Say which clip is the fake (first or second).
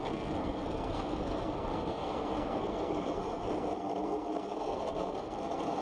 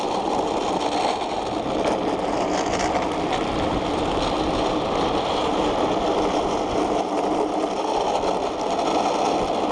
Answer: first